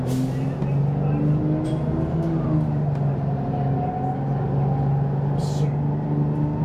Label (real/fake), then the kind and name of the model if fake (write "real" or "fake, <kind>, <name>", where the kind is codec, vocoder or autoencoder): real